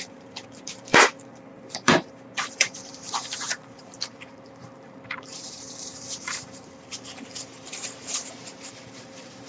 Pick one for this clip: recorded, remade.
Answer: remade